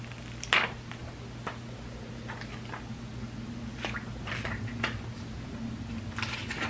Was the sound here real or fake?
real